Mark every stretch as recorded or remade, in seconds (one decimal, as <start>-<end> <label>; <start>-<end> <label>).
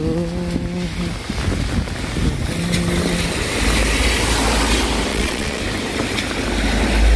0.0-5.1 recorded; 5.1-5.6 remade; 5.6-7.2 recorded